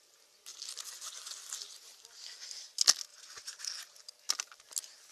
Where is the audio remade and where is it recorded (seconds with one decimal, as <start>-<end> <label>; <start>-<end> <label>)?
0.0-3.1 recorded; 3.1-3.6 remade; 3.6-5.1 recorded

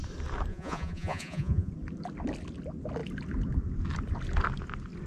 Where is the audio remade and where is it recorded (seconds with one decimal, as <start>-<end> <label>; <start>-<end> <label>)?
0.0-0.5 recorded; 0.5-1.7 remade; 1.7-5.1 recorded

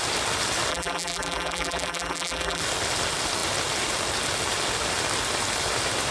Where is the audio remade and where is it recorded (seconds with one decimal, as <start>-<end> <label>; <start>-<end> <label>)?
0.0-0.7 recorded; 0.7-2.6 remade; 2.6-6.1 recorded